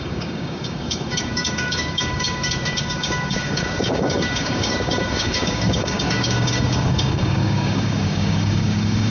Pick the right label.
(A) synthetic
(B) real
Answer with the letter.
A